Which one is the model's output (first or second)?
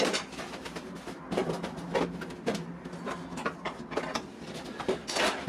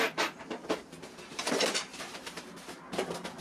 second